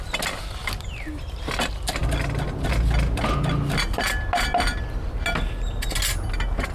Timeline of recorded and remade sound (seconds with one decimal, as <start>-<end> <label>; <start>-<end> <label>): 0.0-6.7 recorded